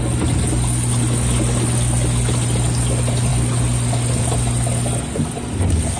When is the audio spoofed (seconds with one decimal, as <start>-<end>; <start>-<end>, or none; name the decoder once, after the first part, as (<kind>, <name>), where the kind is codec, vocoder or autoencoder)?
none